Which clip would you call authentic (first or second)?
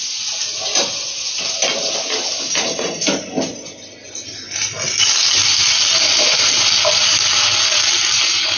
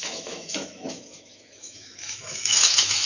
first